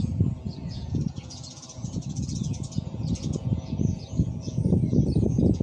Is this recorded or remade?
remade